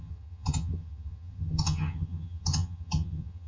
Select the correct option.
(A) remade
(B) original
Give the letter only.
A